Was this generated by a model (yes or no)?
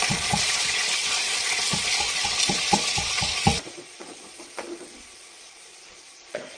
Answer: yes